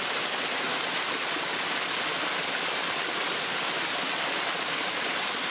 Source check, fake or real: real